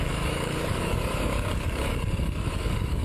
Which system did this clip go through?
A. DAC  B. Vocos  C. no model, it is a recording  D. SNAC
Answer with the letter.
A